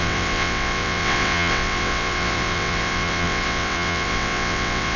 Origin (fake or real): fake